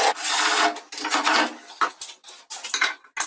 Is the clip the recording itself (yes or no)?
yes